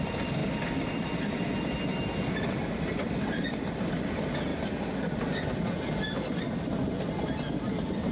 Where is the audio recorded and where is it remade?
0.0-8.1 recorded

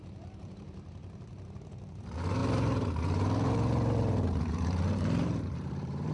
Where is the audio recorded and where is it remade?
0.0-6.1 remade

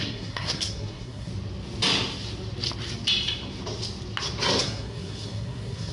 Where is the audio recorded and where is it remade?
0.0-1.3 remade; 1.3-4.6 recorded; 4.6-5.9 remade

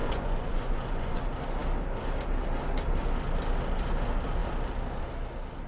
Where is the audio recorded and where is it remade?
0.0-1.2 remade; 1.2-5.7 recorded

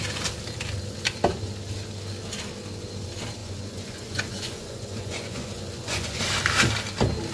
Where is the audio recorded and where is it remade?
0.0-3.4 recorded; 3.4-6.2 remade; 6.2-7.3 recorded

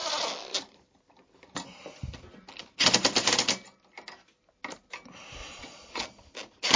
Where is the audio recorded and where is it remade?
0.0-5.4 recorded; 5.4-6.0 remade; 6.0-6.8 recorded

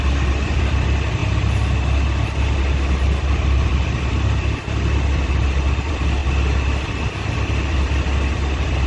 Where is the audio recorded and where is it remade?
0.0-1.2 remade; 1.2-3.3 recorded; 3.3-6.2 remade; 6.2-6.9 recorded; 6.9-8.9 remade

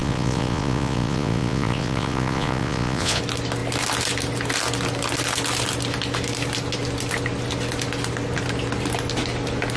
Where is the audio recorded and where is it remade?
0.0-3.2 remade; 3.2-9.8 recorded